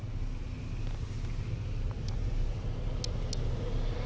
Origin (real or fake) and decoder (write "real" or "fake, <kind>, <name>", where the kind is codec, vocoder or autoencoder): real